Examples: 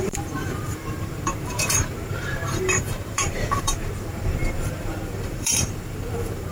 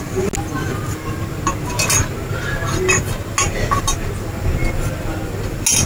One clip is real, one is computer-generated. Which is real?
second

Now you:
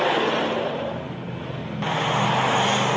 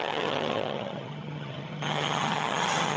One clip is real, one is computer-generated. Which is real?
first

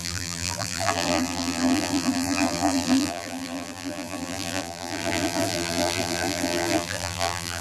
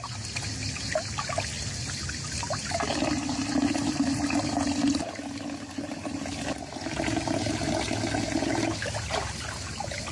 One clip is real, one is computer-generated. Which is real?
second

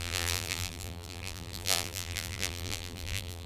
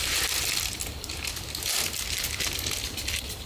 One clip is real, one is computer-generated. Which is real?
second